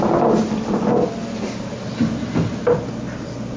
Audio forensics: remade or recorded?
recorded